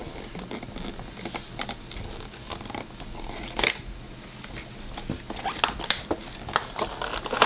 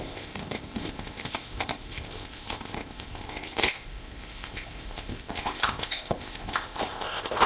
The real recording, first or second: first